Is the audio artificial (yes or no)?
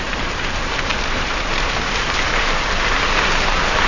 yes